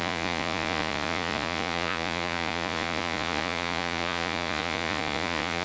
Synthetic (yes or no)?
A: yes